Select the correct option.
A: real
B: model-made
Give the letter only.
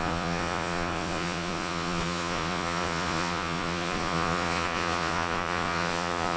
B